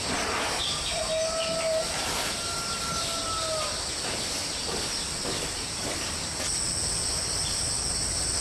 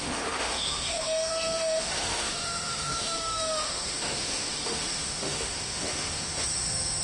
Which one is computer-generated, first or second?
second